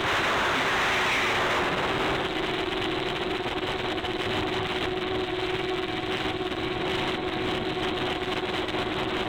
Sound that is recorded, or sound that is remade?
recorded